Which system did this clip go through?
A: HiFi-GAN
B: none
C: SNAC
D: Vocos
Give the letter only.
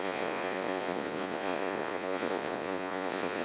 D